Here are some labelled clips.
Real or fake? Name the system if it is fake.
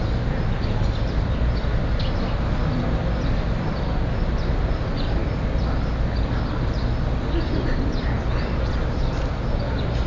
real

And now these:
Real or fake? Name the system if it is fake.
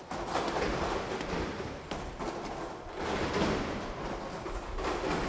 real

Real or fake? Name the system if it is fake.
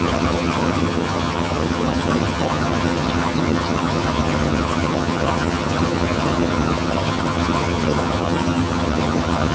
fake, vocoder, HiFi-GAN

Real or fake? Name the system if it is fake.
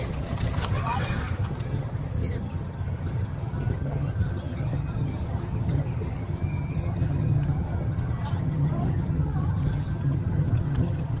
fake, vocoder, HiFi-GAN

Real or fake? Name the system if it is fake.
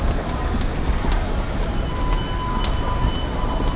real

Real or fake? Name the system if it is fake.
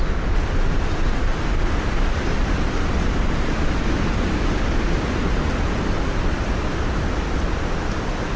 real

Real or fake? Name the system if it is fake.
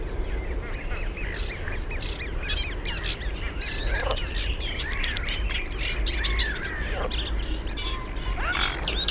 real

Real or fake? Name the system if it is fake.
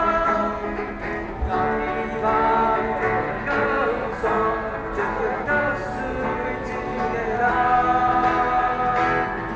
real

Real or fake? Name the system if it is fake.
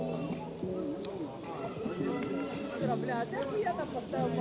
real